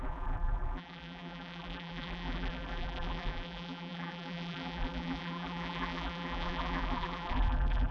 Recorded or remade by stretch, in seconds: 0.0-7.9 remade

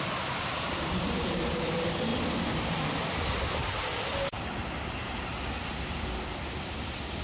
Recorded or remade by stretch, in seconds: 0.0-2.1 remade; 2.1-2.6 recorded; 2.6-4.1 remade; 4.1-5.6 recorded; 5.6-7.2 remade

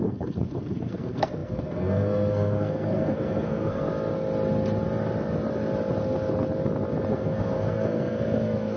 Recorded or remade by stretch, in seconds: 0.0-3.9 remade; 3.9-7.1 recorded; 7.1-8.8 remade